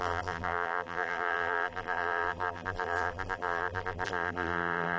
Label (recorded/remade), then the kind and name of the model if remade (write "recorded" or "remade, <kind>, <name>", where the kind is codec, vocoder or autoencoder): remade, vocoder, BigVGAN v2